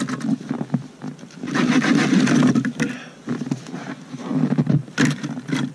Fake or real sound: real